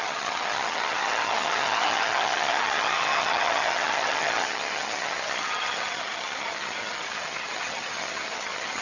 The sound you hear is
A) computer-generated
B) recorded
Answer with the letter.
A